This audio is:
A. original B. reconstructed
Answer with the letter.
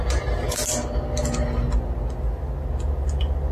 A